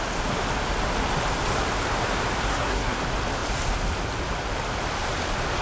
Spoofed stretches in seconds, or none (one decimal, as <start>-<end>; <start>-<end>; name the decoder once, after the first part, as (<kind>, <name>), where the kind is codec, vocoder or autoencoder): 2.5-3.0 (codec, SNAC)